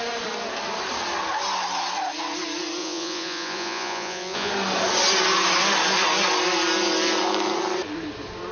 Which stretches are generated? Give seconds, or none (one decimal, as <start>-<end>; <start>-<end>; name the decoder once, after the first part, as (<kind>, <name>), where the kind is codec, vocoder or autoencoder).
2.8-4.5 (vocoder, Vocos)